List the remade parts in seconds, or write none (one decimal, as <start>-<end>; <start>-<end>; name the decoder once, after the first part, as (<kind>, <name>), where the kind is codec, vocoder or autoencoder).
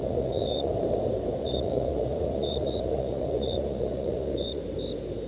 0.0-0.7 (vocoder, Vocos); 1.4-4.6